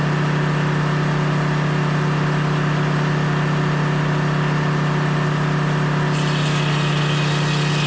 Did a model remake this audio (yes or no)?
no